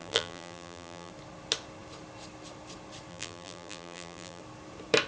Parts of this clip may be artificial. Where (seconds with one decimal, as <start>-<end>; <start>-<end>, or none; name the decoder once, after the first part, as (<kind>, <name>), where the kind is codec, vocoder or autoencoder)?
0.0-1.1 (vocoder, BigVGAN v2); 3.1-4.4